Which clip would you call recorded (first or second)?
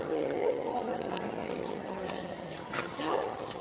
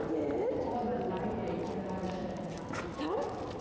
second